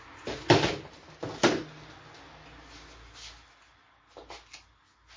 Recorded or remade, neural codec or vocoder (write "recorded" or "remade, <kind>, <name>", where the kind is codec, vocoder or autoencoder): recorded